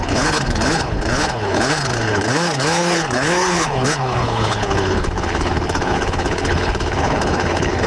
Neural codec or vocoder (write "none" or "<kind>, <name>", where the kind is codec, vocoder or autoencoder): codec, HILCodec